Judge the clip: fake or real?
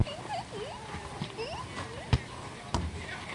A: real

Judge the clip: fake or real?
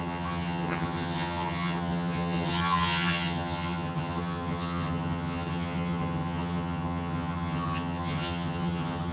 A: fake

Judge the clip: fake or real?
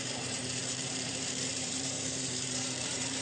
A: fake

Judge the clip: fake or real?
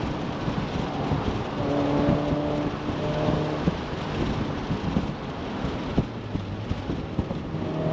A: real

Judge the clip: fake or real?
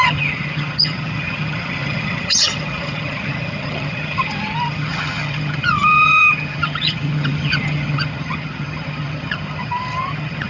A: fake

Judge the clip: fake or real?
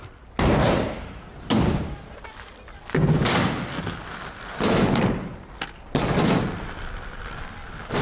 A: real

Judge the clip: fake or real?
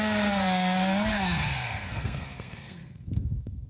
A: fake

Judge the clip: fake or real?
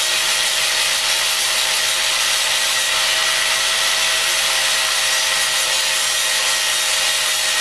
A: real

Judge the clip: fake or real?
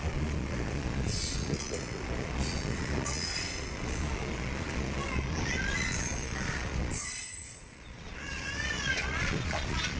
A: fake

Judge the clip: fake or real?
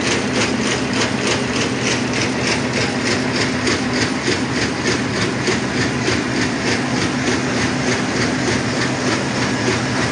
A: real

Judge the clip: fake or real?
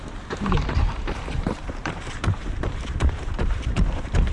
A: fake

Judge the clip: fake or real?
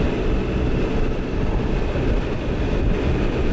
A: real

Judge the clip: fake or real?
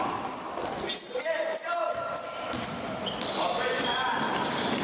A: fake